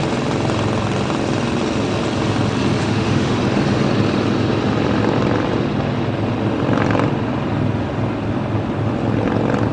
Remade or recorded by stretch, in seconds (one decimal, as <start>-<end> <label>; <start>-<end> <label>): 0.0-2.8 recorded; 2.8-3.4 remade; 3.4-9.7 recorded